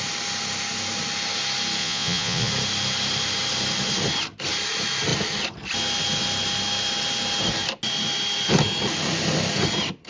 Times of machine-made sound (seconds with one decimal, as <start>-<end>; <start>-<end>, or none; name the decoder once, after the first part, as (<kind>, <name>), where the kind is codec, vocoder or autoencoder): 1.8-2.5 (vocoder, Vocos)